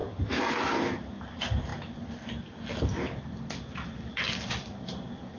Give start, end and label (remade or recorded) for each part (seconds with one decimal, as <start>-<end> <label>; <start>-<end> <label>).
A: 0.0-5.4 recorded